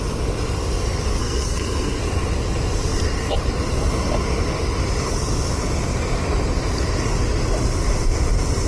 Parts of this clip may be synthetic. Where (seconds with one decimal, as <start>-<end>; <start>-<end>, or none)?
1.2-2.0